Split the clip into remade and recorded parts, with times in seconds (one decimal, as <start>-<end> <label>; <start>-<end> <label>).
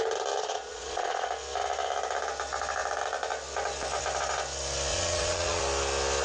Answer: 0.0-0.4 recorded; 0.4-1.3 remade; 1.3-4.9 recorded; 4.9-5.6 remade; 5.6-6.2 recorded